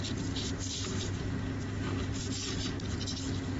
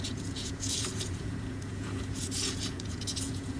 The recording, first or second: first